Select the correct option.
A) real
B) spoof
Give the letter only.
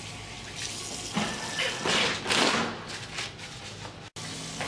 A